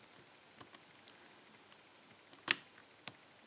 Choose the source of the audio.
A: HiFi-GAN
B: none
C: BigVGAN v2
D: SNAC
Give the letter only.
B